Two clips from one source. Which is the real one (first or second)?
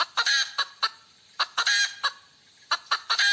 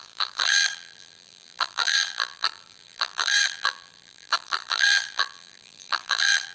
first